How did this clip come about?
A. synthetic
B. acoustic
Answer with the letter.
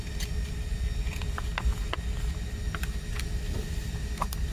B